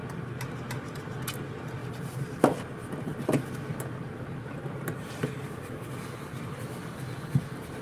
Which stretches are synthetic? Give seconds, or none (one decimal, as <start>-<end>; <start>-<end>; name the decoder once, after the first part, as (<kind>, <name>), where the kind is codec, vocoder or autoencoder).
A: 1.8-2.4 (vocoder, BigVGAN v2); 3.1-6.8